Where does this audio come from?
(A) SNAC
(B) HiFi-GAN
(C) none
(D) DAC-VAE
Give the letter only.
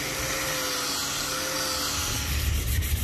C